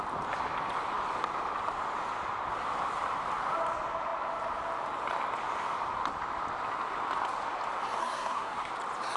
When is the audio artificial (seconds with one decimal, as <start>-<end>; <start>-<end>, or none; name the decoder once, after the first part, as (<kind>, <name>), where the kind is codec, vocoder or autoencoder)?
8.0-8.7 (codec, SNAC)